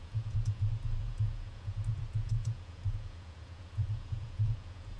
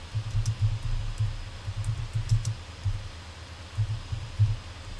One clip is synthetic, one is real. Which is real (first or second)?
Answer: second